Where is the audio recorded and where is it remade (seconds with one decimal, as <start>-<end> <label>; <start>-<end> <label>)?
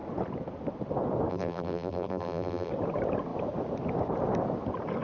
0.0-1.3 recorded; 1.3-2.7 remade; 2.7-5.0 recorded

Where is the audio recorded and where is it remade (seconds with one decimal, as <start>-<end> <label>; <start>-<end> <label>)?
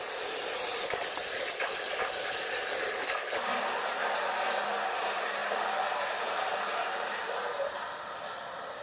0.0-5.4 recorded; 5.4-7.7 remade; 7.7-8.8 recorded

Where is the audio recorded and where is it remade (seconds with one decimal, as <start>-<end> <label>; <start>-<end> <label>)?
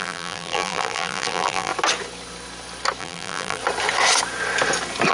0.0-1.7 remade; 1.7-3.0 recorded; 3.0-3.6 remade; 3.6-5.1 recorded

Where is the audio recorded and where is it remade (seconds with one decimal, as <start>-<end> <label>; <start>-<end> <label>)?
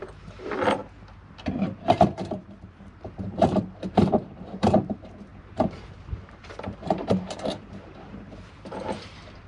0.0-0.8 remade; 0.8-1.6 recorded; 1.6-5.3 remade; 5.3-6.4 recorded; 6.4-7.0 remade; 7.0-7.6 recorded; 7.6-9.5 remade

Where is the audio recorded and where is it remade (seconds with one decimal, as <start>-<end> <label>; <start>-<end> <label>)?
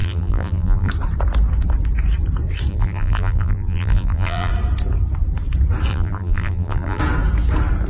0.0-0.9 remade; 0.9-2.7 recorded; 2.7-4.5 remade; 4.5-5.9 recorded; 5.9-7.0 remade; 7.0-7.9 recorded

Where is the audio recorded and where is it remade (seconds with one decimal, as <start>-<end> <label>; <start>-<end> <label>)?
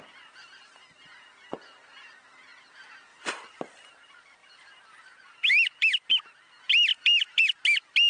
0.0-3.1 recorded; 3.1-3.7 remade; 3.7-6.9 recorded; 6.9-7.4 remade; 7.4-8.1 recorded